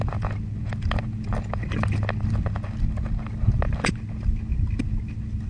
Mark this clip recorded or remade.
recorded